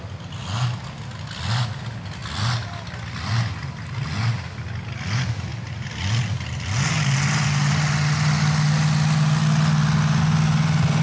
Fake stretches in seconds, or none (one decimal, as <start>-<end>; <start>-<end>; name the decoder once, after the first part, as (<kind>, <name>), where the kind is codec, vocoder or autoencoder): none

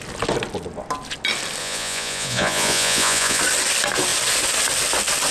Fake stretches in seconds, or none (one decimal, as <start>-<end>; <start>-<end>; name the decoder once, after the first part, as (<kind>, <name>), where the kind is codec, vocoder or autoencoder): 1.6-3.4 (vocoder, Vocos)

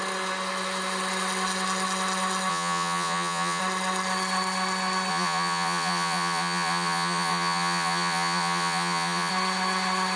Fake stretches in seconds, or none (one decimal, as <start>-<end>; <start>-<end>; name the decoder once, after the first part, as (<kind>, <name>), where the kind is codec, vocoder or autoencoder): 2.5-3.6 (vocoder, Vocos); 5.1-9.3

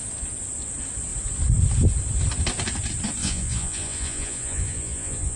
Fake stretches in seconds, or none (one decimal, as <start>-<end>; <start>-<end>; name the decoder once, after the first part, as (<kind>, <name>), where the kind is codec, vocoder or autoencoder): 3.2-5.4 (vocoder, Vocos)

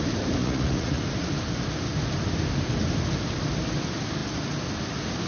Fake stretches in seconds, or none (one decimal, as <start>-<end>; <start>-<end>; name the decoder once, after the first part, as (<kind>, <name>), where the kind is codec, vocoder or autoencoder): 0.4-1.0 (vocoder, Vocos)

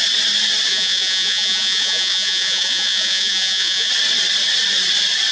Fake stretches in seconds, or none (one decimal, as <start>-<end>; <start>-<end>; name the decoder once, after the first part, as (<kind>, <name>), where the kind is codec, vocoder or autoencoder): 0.7-3.9 (vocoder, Vocos)

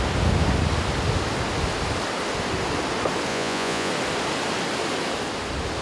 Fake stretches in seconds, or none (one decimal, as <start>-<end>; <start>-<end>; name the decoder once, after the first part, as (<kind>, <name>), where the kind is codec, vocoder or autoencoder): 3.3-3.9 (vocoder, Vocos)